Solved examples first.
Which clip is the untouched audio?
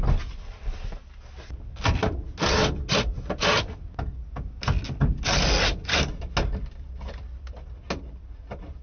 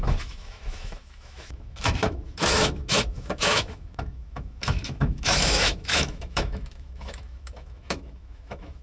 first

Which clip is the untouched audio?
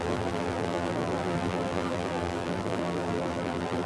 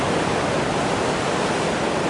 second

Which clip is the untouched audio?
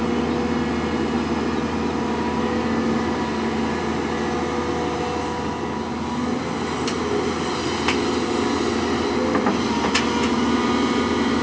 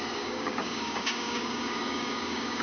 first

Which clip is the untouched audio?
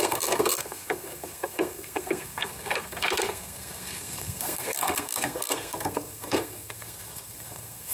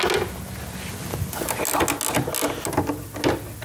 second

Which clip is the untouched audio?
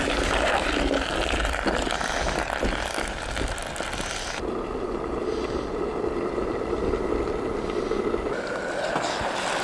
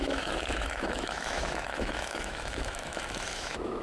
first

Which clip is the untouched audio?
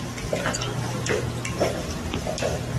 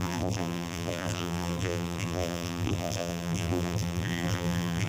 first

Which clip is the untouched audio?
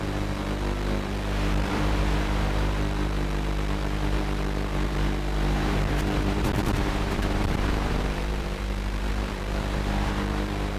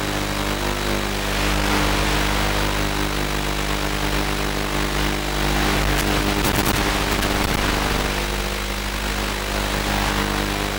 second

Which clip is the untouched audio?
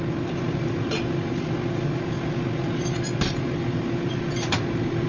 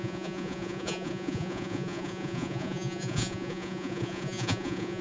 first